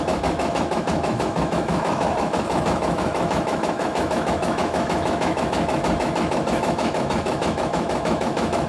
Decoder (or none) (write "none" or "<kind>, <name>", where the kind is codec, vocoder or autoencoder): autoencoder, DAC-VAE